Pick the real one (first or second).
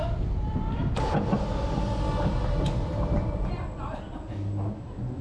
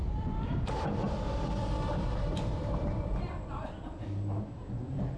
first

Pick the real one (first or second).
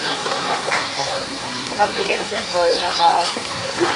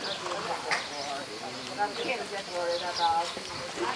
second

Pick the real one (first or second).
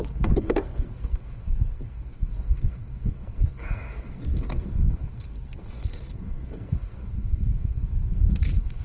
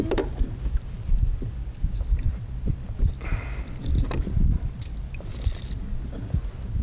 second